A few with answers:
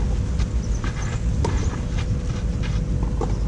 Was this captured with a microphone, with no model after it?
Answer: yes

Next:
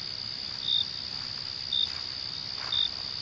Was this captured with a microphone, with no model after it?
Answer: yes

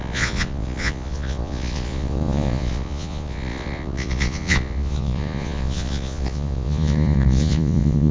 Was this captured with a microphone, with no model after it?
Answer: no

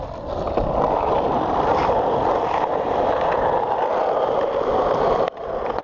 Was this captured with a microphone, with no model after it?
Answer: yes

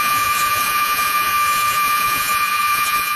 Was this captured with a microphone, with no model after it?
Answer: no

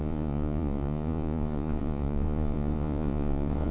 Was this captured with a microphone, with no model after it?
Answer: no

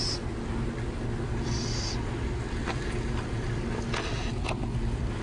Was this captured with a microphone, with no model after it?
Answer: yes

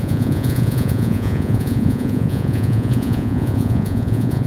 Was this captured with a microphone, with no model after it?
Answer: no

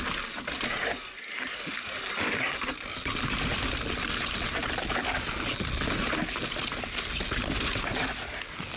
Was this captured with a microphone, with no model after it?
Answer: yes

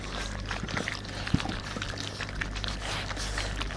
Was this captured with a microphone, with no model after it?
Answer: yes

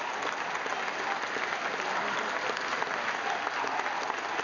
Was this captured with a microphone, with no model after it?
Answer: yes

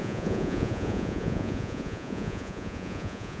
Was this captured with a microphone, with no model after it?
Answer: no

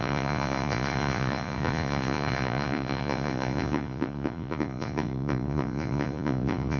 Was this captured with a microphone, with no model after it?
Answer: no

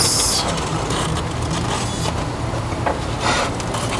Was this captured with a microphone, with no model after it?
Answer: yes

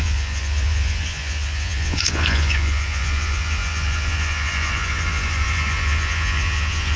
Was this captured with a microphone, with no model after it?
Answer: no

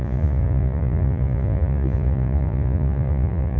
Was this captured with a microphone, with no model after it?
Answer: no